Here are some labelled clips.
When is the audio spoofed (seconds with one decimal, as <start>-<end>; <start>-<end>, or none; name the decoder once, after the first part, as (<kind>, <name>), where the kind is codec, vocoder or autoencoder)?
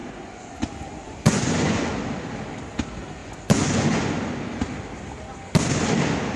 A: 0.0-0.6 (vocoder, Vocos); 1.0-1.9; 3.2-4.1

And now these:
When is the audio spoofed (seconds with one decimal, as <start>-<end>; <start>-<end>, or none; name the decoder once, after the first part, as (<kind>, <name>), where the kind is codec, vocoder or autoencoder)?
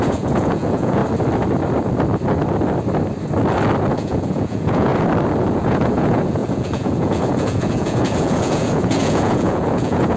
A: 0.0-1.0 (vocoder, Vocos); 3.9-4.9; 5.5-10.2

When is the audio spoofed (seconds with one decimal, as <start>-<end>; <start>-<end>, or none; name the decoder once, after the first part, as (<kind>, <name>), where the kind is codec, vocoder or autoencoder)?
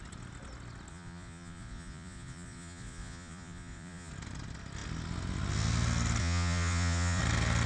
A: 0.9-4.1 (vocoder, Vocos); 6.2-7.2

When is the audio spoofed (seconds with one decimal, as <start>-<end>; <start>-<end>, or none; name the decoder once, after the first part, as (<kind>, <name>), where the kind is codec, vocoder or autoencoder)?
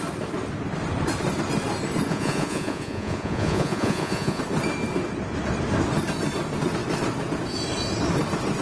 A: 2.1-4.4 (vocoder, Vocos)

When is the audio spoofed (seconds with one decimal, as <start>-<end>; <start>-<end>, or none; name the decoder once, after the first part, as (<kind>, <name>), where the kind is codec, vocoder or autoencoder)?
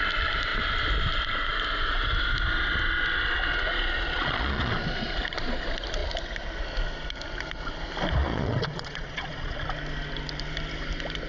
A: 3.5-4.7 (vocoder, Vocos); 8.2-9.6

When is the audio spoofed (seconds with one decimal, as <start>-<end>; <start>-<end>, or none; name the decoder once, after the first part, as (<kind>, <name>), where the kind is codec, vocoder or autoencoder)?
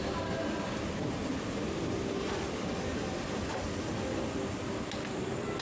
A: none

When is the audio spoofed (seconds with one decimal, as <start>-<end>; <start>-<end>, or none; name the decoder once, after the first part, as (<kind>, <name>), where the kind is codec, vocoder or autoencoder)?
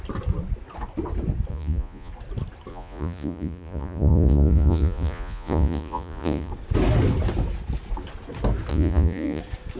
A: 1.5-2.1 (vocoder, Vocos); 2.7-6.5; 8.7-9.4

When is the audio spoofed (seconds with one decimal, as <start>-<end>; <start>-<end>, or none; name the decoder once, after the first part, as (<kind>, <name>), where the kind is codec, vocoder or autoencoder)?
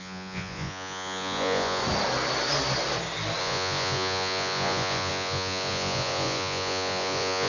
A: 0.0-1.8 (vocoder, Vocos); 3.4-7.5